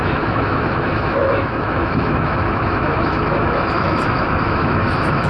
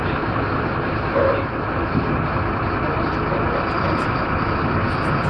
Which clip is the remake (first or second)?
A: first